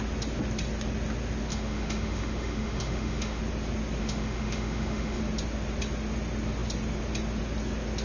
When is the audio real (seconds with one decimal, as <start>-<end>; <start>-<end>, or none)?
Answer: 0.0-1.5; 3.4-4.0; 5.2-8.0